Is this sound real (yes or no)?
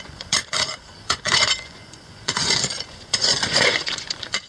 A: no